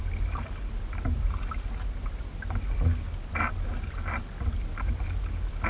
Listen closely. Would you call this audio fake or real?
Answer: real